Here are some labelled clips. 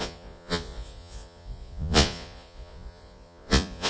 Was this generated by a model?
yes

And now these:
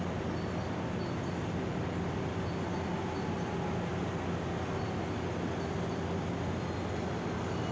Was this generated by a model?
no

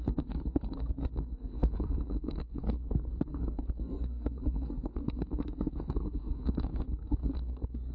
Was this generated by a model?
yes